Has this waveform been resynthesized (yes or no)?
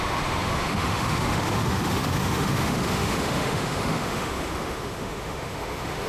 yes